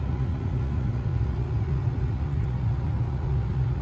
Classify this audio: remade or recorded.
remade